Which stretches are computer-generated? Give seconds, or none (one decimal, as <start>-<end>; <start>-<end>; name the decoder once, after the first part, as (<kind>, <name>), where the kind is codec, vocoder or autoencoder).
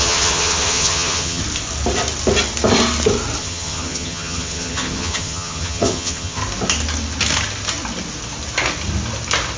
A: 0.0-1.4 (vocoder, HiFi-GAN); 3.4-6.4